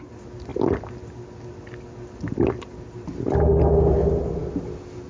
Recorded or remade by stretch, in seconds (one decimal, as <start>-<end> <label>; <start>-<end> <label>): 0.0-5.1 recorded